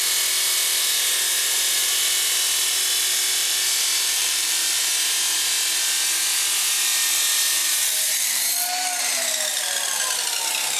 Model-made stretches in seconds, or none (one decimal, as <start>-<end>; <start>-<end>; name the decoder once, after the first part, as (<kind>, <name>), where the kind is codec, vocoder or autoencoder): 4.2-4.9 (vocoder, BigVGAN v2); 7.6-8.5